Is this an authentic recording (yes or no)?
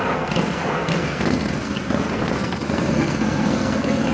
no